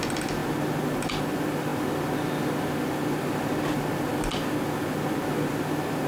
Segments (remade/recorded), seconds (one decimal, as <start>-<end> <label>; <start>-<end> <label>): 0.0-6.1 recorded